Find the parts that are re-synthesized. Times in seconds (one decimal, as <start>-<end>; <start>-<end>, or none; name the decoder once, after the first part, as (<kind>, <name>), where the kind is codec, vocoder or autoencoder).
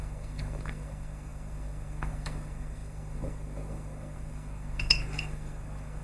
0.0-6.0 (codec, SNAC)